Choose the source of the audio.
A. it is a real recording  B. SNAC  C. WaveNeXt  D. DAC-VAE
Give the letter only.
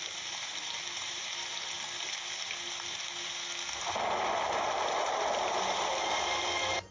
A